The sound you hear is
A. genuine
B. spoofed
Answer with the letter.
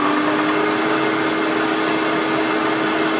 A